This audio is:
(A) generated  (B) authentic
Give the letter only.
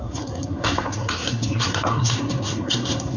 A